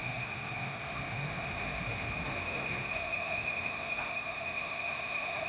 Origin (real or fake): fake